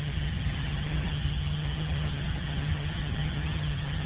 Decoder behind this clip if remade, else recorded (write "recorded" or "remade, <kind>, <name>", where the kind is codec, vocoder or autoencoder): remade, vocoder, HiFi-GAN